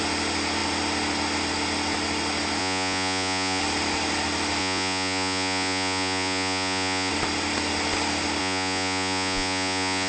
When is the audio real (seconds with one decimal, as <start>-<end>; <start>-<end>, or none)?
0.0-2.6; 3.6-4.6; 7.1-8.4